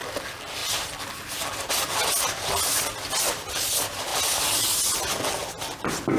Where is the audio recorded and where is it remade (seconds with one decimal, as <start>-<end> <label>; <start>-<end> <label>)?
0.0-6.2 recorded